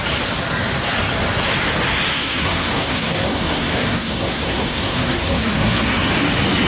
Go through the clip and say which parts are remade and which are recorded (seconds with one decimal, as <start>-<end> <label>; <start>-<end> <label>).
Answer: 0.0-2.1 recorded; 2.1-6.1 remade; 6.1-6.7 recorded